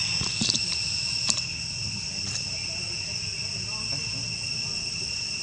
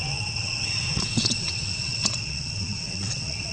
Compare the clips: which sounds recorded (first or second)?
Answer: first